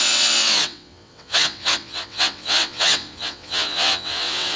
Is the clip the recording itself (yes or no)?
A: no